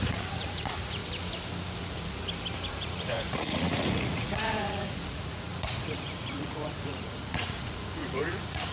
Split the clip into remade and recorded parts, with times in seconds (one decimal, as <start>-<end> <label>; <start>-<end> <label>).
0.0-1.0 remade; 1.0-1.8 recorded; 1.8-2.2 remade; 2.2-2.7 recorded; 2.7-8.7 remade